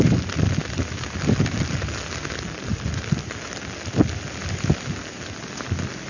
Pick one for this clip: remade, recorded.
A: recorded